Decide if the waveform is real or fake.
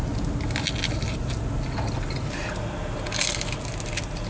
real